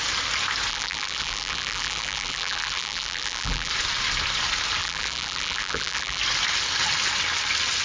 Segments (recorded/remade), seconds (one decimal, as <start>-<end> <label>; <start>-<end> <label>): 0.0-0.7 recorded; 0.7-3.7 remade; 3.7-4.8 recorded; 4.8-6.2 remade; 6.2-7.8 recorded